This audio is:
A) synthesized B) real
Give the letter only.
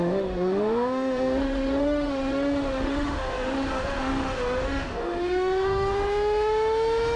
A